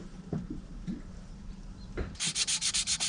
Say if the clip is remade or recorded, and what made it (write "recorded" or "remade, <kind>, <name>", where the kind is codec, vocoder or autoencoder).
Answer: remade, vocoder, BigVGAN v2